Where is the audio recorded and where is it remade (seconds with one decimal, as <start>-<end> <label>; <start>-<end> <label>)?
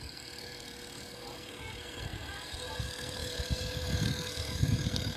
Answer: 0.0-5.2 remade